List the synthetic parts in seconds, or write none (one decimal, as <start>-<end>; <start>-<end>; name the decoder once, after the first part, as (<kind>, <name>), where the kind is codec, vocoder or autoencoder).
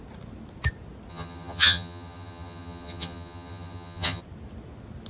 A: 1.1-4.2 (vocoder, HiFi-GAN)